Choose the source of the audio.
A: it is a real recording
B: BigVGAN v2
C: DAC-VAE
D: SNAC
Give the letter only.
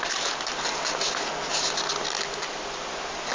A